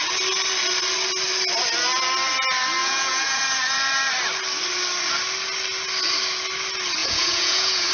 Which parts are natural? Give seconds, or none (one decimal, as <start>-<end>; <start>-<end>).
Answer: 0.0-2.8; 3.4-7.0